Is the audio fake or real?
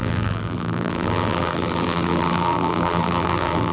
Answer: fake